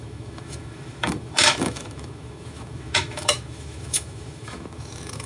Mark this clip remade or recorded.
remade